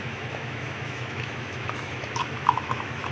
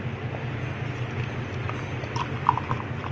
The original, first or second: second